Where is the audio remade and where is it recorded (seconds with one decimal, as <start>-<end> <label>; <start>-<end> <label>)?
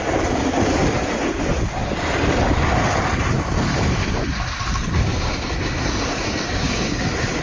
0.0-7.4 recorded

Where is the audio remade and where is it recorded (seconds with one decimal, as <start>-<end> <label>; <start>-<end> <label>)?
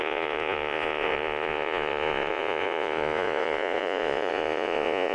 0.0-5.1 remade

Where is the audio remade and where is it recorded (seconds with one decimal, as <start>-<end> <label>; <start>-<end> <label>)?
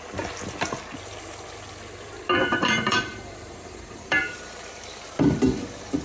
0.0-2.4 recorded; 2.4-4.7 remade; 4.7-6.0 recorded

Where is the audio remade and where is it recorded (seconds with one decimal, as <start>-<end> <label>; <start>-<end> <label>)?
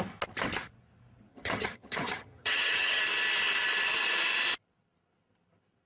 0.0-1.3 recorded; 1.3-3.0 remade; 3.0-5.9 recorded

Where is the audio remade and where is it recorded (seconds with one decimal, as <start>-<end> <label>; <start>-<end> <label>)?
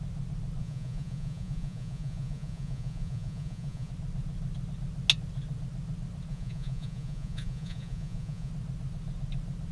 0.0-0.6 recorded; 0.6-3.9 remade; 3.9-6.3 recorded; 6.3-8.5 remade; 8.5-9.7 recorded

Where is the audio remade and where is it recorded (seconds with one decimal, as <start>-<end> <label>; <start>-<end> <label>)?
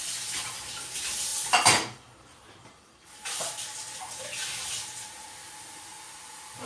0.0-6.7 recorded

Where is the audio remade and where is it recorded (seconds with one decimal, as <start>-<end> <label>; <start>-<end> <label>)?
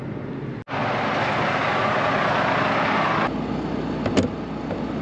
0.0-5.0 recorded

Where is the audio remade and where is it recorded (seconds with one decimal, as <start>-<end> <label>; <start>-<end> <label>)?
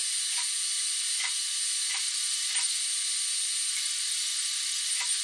0.0-2.0 recorded; 2.0-2.8 remade; 2.8-3.7 recorded; 3.7-5.2 remade